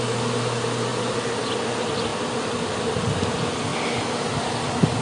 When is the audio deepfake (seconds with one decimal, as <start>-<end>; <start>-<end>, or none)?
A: none